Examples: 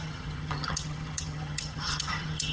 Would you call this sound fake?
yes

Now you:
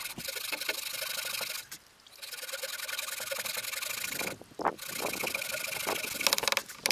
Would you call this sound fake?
no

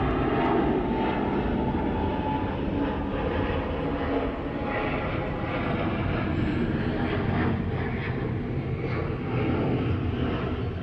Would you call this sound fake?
no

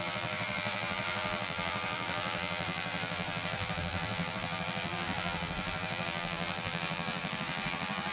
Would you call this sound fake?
yes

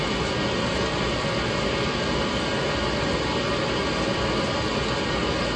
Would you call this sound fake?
no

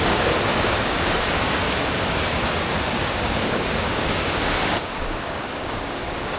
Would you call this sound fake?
yes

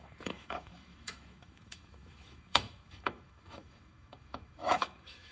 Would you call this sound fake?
yes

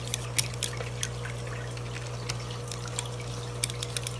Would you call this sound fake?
no